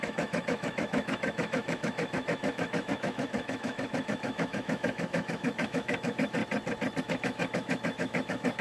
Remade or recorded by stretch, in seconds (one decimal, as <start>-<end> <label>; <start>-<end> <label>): 0.0-6.4 remade; 6.4-7.0 recorded; 7.0-8.6 remade